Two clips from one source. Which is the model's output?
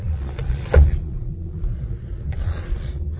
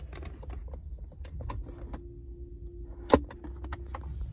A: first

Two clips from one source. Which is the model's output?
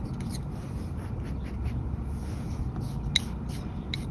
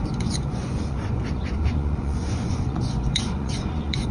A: second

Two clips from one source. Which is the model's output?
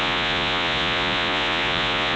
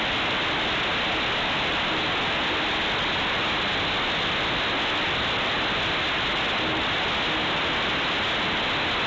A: first